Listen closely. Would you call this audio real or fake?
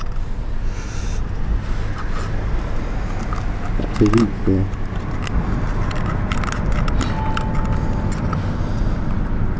real